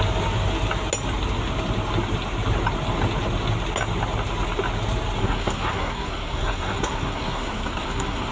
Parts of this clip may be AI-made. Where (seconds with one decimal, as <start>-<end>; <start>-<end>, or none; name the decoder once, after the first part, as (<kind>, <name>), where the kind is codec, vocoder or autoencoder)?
5.2-8.3 (codec, SNAC)

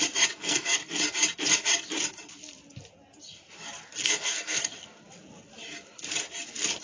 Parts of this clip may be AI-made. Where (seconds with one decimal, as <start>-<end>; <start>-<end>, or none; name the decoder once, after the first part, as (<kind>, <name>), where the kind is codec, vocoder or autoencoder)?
0.4-0.9 (codec, SNAC); 3.9-4.8

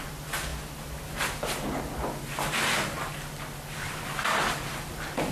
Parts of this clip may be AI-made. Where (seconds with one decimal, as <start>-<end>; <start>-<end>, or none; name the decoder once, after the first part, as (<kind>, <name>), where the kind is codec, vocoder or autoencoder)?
none

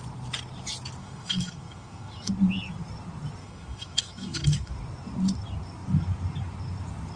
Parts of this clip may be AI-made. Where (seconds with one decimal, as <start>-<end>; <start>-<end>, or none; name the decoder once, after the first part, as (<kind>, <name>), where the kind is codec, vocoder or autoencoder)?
1.0-2.3 (autoencoder, DAC-VAE); 3.4-4.7

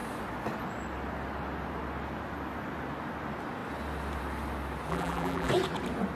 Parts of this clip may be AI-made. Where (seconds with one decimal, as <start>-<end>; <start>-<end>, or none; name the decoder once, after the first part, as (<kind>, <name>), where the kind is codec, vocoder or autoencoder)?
4.9-5.5 (vocoder, BigVGAN v2)